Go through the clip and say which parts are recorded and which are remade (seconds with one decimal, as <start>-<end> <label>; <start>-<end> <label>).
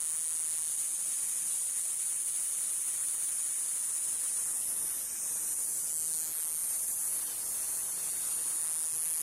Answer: 0.0-0.7 recorded; 0.7-5.9 remade; 5.9-6.6 recorded; 6.6-8.6 remade; 8.6-9.2 recorded